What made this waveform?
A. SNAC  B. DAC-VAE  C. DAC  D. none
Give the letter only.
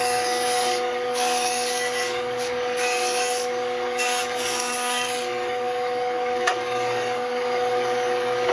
C